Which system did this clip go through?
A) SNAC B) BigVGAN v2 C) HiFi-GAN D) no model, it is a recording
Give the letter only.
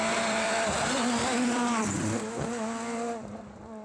B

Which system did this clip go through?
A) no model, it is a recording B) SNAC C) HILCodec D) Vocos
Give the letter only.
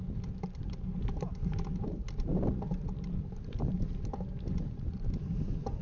A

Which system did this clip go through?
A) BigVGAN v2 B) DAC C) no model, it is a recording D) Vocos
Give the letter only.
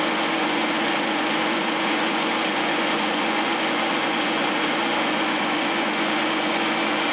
D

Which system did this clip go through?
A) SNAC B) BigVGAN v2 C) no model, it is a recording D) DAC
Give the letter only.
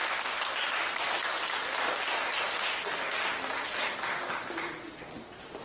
C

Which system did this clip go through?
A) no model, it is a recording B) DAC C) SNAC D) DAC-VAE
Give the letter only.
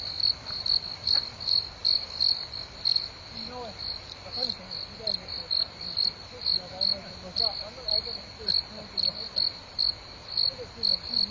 A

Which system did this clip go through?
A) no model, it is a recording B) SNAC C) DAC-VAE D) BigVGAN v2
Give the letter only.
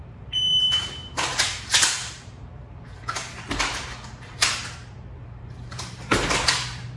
D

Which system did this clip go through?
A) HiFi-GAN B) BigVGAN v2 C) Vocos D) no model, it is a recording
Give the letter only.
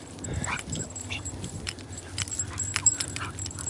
B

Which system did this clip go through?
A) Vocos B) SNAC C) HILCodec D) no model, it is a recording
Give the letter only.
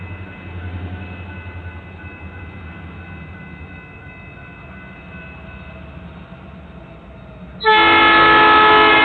D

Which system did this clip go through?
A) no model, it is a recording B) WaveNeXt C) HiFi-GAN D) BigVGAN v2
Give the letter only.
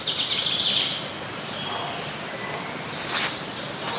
A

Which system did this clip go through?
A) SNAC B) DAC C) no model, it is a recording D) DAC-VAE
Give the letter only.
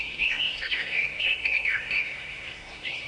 A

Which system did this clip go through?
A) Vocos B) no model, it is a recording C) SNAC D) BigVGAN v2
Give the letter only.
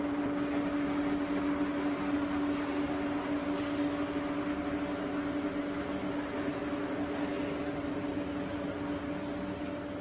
B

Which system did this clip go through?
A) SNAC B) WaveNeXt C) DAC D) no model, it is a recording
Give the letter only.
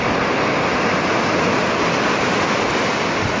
D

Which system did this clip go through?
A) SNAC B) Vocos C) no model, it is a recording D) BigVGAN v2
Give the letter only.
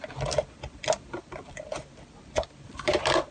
D